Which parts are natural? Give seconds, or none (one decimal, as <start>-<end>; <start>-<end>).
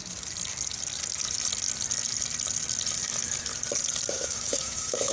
0.0-3.1; 3.5-4.1